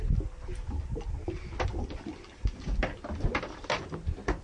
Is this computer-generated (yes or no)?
no